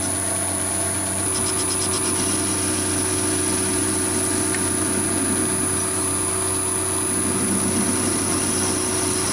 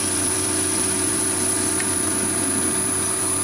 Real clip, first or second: first